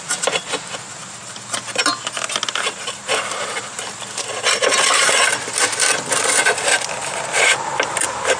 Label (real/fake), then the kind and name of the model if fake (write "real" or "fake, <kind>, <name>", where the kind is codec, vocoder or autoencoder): real